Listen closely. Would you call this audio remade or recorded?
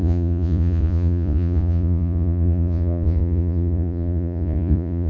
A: remade